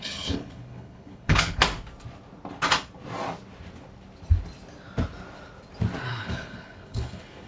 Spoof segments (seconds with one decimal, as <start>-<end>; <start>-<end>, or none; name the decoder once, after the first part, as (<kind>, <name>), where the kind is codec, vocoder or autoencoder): 0.0-1.6 (codec, HILCodec); 6.1-7.5